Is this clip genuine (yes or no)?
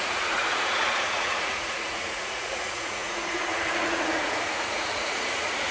no